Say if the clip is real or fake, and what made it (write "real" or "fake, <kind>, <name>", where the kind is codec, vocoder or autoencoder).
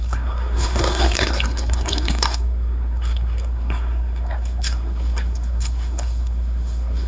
fake, codec, SNAC